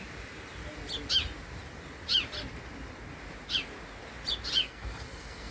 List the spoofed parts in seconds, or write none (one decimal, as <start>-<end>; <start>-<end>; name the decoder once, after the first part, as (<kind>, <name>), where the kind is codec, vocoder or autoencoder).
4.6-5.5 (codec, SNAC)